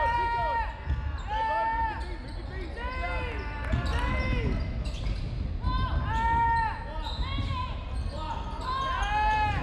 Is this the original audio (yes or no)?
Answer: yes